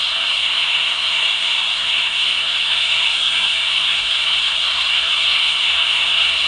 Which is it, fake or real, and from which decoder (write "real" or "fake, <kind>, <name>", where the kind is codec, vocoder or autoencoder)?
fake, codec, SNAC